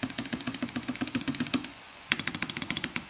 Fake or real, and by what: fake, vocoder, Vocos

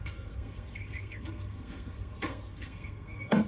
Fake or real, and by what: fake, codec, SNAC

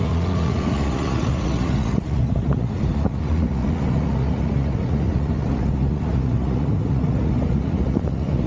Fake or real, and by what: fake, vocoder, Vocos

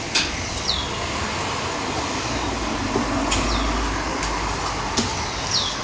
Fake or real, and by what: real